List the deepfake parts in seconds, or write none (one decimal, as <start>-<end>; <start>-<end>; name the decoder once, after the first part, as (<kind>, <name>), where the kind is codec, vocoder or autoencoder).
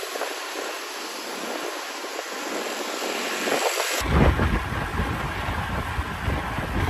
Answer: 4.9-5.6 (vocoder, BigVGAN v2)